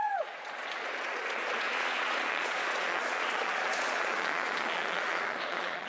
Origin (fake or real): fake